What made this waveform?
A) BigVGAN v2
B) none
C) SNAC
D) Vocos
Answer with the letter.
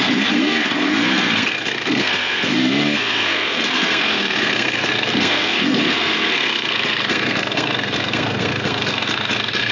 C